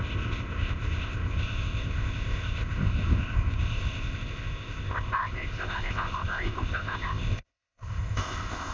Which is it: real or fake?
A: fake